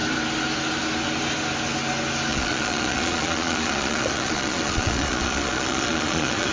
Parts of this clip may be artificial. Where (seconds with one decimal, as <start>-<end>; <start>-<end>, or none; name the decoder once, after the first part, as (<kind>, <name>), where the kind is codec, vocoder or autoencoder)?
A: 2.3-6.5 (vocoder, Vocos)